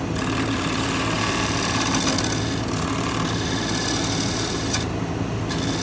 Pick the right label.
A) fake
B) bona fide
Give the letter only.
B